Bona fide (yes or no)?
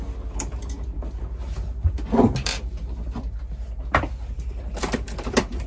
yes